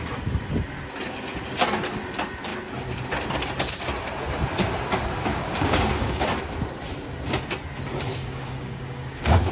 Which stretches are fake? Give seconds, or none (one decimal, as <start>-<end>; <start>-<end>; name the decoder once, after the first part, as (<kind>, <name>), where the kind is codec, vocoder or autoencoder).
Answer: 5.3-6.3 (codec, DAC); 8.1-9.5